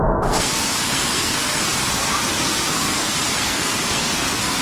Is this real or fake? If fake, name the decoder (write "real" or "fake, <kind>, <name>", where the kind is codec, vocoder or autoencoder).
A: fake, codec, SNAC